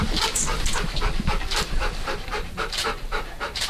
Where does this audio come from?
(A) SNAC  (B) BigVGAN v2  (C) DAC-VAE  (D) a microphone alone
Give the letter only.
B